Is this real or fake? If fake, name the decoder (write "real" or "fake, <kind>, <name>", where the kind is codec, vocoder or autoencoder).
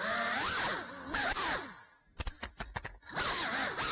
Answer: real